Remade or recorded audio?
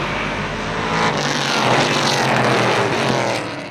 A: recorded